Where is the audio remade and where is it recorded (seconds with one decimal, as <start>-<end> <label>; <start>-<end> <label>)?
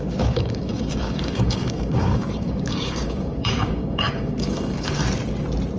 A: 0.0-5.0 remade; 5.0-5.8 recorded